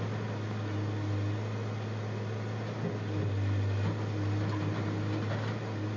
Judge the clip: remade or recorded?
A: recorded